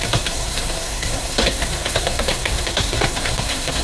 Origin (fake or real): fake